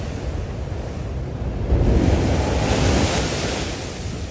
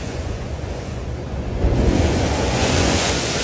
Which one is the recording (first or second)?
first